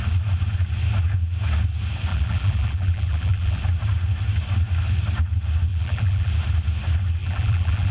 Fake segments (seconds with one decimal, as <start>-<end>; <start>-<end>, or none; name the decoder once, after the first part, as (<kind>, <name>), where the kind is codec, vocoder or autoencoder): 2.1-3.6 (vocoder, BigVGAN v2); 5.7-6.3; 7.2-7.9